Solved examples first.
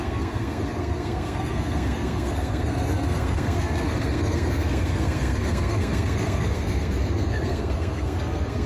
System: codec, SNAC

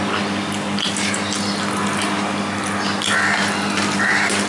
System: none